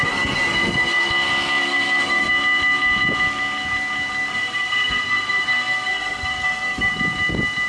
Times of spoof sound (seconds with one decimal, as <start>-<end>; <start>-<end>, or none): 0.0-1.1; 1.6-2.3; 4.3-6.9